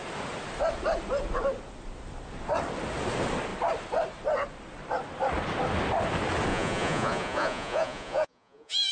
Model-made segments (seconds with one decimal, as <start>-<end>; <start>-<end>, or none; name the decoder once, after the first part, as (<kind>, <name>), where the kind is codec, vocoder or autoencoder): 6.5-8.9 (vocoder, Vocos)